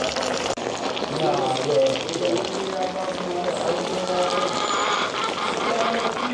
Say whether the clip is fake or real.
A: real